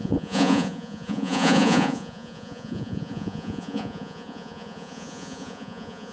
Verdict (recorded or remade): remade